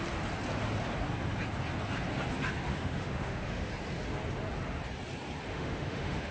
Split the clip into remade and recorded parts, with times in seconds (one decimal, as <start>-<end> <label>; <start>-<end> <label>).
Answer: 0.0-2.7 recorded; 2.7-3.7 remade; 3.7-5.5 recorded; 5.5-6.3 remade